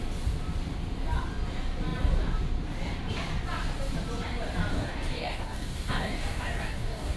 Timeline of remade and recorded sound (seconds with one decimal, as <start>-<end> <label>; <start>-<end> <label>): 0.0-4.7 recorded; 4.7-7.2 remade